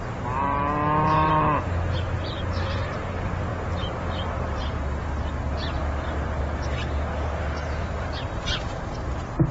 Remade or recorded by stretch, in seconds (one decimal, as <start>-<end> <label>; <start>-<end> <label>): 0.0-5.8 recorded; 5.8-6.4 remade; 6.4-7.6 recorded; 7.6-8.4 remade; 8.4-9.5 recorded